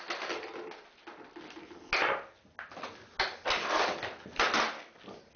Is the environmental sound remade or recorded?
recorded